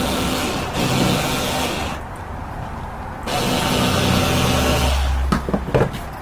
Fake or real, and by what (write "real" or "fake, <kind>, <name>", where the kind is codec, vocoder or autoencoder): real